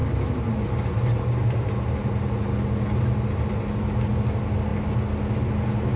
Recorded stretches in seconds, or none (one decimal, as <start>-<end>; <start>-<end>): 0.0-6.0